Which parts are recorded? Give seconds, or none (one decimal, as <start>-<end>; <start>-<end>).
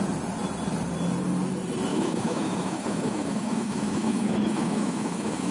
0.0-1.9